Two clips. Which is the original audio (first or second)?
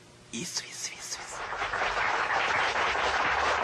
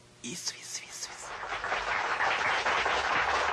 second